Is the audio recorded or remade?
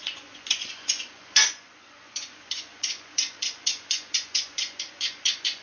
remade